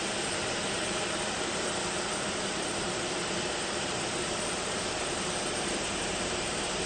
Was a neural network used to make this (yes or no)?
yes